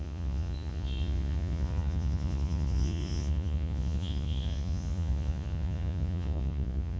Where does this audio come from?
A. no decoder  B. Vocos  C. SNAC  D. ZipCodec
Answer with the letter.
B